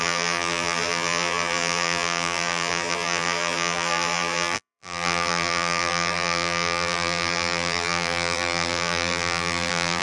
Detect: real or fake fake